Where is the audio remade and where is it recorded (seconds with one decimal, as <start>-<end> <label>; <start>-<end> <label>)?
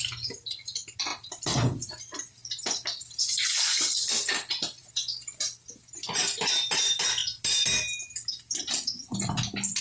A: 0.0-3.0 recorded; 3.0-3.8 remade; 3.8-4.8 recorded; 4.8-5.4 remade; 5.4-9.8 recorded